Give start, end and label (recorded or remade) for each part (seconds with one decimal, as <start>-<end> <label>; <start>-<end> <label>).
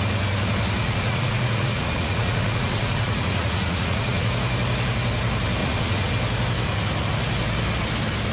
0.0-0.8 recorded; 0.8-4.3 remade; 4.3-5.6 recorded; 5.6-6.1 remade; 6.1-8.3 recorded